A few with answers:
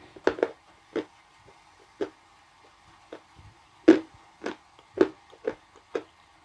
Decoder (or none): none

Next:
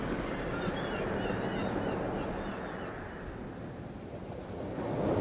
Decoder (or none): none